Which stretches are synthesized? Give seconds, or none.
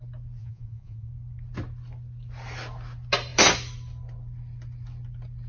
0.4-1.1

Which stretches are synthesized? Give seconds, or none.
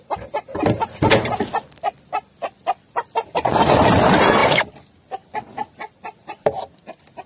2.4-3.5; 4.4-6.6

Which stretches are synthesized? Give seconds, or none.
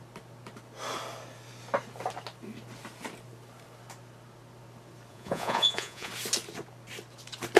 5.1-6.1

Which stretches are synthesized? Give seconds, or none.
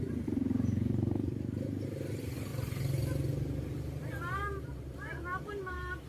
0.0-2.5; 4.0-6.1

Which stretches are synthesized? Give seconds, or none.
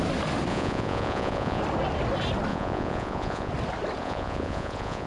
0.5-1.6; 2.5-3.5; 4.0-5.1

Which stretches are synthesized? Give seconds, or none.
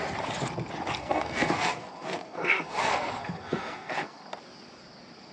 1.0-4.2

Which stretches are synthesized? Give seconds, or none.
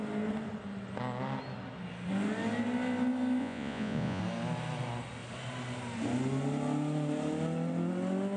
3.4-4.2